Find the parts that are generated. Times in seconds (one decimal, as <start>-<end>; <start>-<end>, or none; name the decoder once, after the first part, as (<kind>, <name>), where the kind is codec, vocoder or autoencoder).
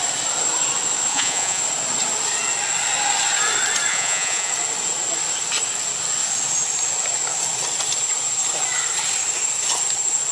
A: 1.1-1.6 (vocoder, Vocos); 3.9-4.5